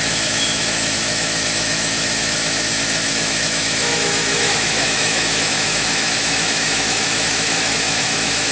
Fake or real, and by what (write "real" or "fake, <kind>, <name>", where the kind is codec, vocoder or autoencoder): fake, autoencoder, DAC-VAE